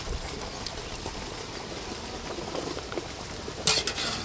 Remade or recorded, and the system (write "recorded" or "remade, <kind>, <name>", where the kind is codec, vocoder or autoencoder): recorded